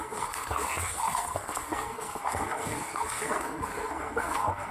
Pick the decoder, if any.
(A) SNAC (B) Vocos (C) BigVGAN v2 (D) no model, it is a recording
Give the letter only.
A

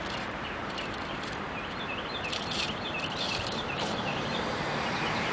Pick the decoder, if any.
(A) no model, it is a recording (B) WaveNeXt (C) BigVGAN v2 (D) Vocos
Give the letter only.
C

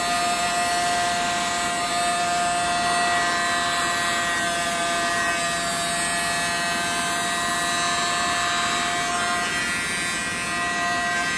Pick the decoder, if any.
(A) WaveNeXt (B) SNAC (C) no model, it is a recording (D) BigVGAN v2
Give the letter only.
C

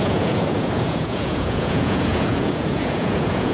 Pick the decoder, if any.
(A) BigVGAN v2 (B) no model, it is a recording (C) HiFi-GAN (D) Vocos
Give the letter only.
D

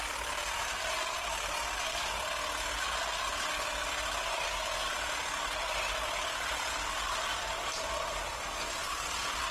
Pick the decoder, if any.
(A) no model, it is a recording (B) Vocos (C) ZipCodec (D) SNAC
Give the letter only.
A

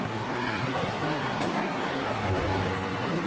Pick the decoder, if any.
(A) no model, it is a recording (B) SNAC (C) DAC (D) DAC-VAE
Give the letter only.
B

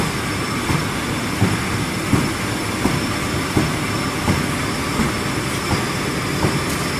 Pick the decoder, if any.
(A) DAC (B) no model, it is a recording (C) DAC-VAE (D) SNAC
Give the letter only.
B